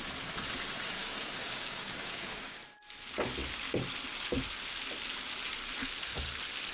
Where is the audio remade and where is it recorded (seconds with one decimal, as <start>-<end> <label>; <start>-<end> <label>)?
0.0-1.0 recorded; 1.0-2.6 remade; 2.6-6.7 recorded